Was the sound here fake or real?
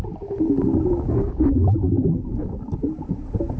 real